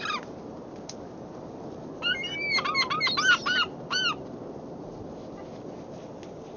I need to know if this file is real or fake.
real